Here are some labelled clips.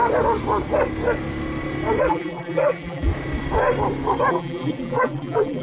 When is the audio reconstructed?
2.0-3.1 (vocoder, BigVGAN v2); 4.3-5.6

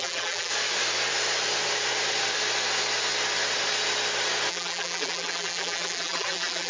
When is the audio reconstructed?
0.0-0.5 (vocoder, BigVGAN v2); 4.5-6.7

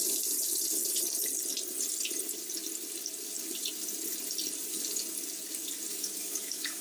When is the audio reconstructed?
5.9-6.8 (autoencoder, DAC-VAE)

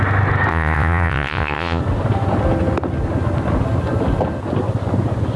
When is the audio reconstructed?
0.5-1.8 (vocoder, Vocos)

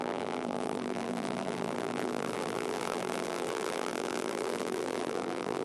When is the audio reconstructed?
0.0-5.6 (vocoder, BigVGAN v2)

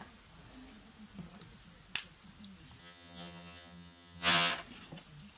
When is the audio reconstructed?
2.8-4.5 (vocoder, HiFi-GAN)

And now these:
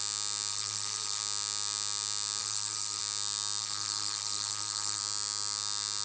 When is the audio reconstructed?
0.5-1.2 (codec, SNAC); 2.4-3.0; 3.6-5.0